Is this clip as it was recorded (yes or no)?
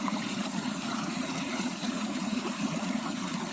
no